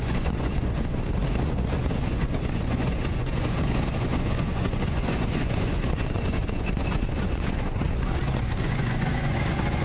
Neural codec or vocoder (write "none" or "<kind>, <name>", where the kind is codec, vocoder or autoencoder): vocoder, Vocos